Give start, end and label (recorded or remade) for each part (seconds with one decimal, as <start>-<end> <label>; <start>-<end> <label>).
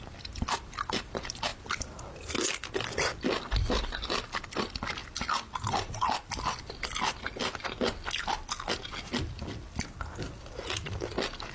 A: 0.0-11.5 recorded